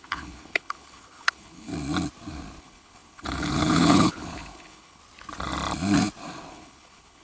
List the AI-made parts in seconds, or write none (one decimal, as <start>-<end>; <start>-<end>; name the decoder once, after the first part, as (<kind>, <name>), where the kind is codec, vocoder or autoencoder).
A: 0.0-1.7 (codec, HILCodec); 2.6-5.0; 6.5-7.2

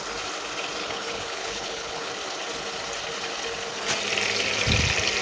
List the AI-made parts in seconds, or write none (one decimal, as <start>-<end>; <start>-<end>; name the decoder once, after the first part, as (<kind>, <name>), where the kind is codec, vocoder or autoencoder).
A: 0.8-2.1 (codec, HILCodec)

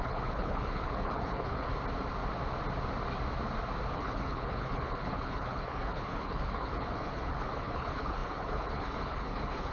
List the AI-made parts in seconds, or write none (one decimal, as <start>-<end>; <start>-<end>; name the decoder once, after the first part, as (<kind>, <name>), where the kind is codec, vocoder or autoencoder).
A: 0.0-1.7 (codec, HILCodec); 3.9-9.7

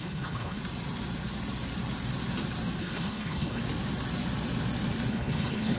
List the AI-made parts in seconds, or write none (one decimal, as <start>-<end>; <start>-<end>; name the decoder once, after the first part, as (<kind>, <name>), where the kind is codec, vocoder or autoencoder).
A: 0.0-0.6 (codec, HILCodec); 2.8-3.6; 5.1-5.8